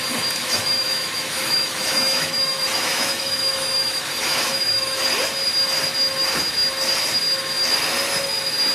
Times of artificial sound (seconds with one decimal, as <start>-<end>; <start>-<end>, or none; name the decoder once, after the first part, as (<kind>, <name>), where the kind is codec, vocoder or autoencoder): 0.4-5.0 (autoencoder, DAC-VAE)

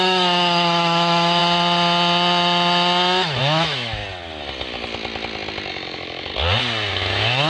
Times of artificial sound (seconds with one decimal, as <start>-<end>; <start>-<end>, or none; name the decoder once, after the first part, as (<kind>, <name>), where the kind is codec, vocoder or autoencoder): 0.0-1.4 (autoencoder, DAC-VAE); 3.4-4.0; 5.7-6.3; 6.9-7.5